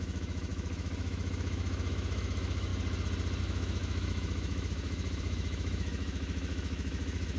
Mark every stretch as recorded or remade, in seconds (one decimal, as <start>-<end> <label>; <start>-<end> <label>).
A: 0.0-2.7 remade; 2.7-3.4 recorded; 3.4-7.4 remade